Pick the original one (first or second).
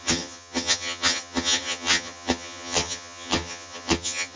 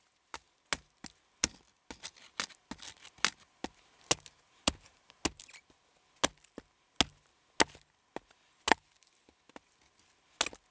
second